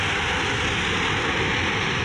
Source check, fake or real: real